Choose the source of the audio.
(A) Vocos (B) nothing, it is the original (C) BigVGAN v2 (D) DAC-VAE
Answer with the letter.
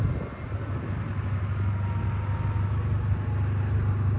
B